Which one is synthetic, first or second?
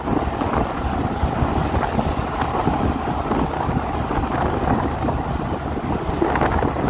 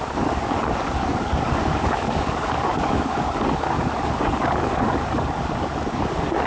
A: second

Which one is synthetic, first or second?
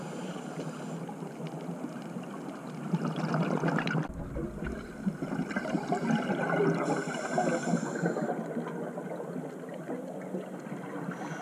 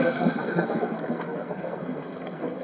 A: second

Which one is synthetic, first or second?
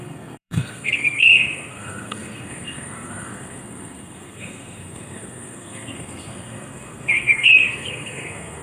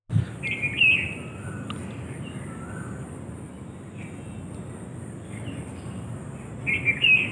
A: first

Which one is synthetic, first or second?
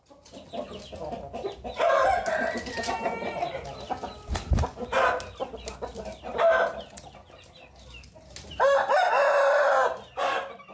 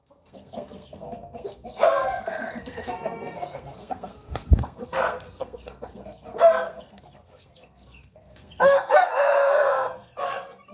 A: second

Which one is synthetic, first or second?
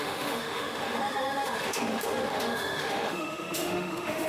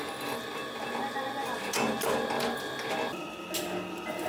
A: first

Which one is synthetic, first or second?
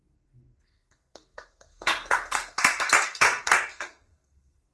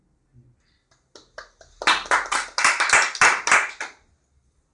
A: first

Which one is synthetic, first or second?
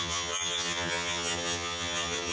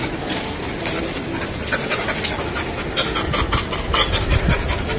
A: first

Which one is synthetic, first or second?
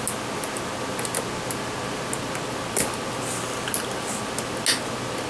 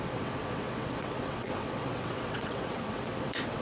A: second